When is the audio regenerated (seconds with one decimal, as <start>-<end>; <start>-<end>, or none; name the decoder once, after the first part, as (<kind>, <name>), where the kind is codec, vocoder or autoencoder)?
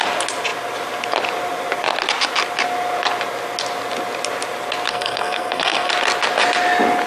4.9-5.9 (codec, SNAC)